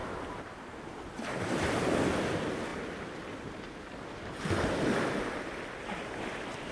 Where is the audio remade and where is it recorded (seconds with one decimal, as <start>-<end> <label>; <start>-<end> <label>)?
0.0-6.7 recorded